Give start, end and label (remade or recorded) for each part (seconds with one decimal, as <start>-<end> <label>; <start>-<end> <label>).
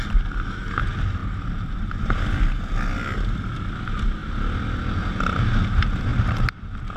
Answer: 0.0-7.0 recorded